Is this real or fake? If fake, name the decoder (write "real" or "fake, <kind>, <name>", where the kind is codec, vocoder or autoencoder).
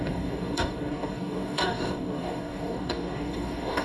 fake, codec, DAC